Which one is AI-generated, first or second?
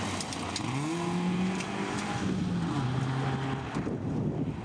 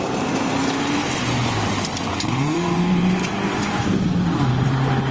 second